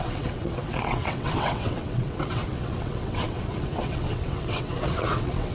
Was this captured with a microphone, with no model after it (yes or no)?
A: no